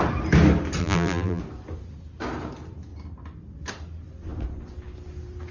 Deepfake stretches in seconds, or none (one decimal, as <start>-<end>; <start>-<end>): 0.8-1.4